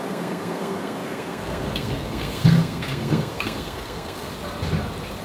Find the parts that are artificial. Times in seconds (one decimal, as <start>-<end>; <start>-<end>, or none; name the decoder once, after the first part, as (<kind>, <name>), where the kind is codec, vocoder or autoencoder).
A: 0.0-4.3 (codec, SNAC)